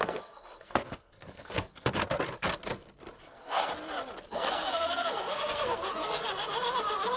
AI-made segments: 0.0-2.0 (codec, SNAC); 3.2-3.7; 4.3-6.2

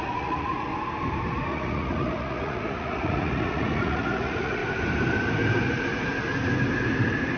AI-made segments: 0.0-0.7 (vocoder, Vocos); 1.5-4.6

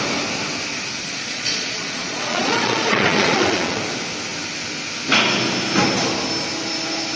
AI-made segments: 1.0-3.8 (vocoder, Vocos)

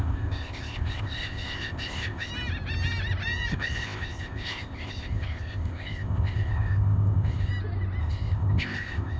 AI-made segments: 0.0-2.3 (codec, ZipCodec); 3.5-7.5; 8.0-9.2